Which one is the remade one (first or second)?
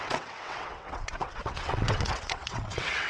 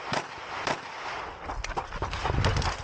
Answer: first